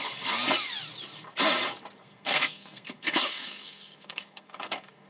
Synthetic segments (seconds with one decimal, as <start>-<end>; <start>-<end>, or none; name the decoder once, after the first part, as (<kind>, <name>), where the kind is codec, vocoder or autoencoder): 2.0-5.1 (codec, SNAC)

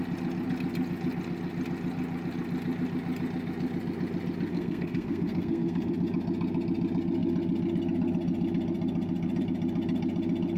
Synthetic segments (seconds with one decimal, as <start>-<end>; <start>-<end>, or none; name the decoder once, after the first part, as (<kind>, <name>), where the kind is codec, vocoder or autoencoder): 4.5-5.9 (codec, SNAC)

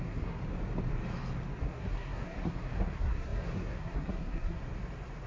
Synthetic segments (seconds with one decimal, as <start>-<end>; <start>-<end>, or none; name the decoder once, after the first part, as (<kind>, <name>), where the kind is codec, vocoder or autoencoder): 0.0-0.4 (codec, SNAC); 1.6-4.6

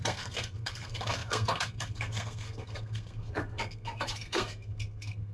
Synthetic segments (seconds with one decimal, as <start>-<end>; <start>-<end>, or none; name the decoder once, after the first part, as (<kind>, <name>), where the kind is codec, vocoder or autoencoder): 0.0-5.3 (codec, SNAC)

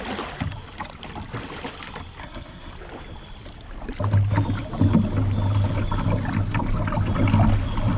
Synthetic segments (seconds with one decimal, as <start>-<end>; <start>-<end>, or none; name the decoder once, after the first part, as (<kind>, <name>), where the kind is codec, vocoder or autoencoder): 2.2-2.7 (codec, SNAC)

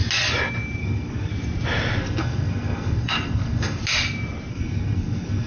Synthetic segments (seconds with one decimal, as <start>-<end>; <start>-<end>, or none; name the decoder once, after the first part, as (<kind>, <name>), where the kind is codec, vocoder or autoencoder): 0.8-1.3 (codec, SNAC); 2.0-3.8; 4.5-5.5

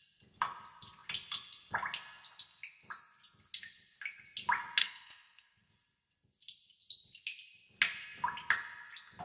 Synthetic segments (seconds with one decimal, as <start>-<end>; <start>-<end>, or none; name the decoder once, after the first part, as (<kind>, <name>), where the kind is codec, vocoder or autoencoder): 4.8-5.7 (codec, SNAC)

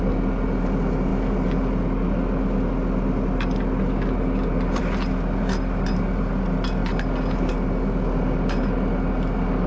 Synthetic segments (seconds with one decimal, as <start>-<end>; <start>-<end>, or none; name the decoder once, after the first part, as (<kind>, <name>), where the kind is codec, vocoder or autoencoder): none